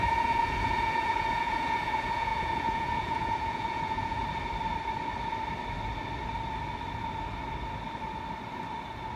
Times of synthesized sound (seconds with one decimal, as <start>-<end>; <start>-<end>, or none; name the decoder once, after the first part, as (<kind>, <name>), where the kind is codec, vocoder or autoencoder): 0.0-4.2 (vocoder, Vocos)